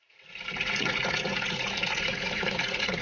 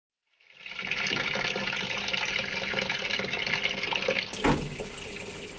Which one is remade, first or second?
first